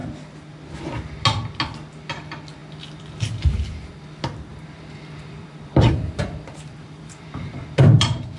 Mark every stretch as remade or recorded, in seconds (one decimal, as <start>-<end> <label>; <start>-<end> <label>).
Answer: 0.0-4.5 recorded; 4.5-8.4 remade